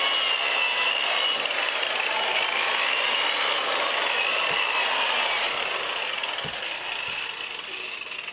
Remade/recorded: recorded